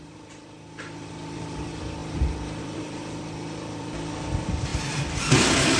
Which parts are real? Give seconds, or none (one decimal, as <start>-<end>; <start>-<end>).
2.0-2.6; 4.7-5.2